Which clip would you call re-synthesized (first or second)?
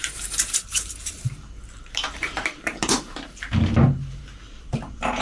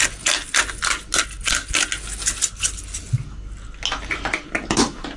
first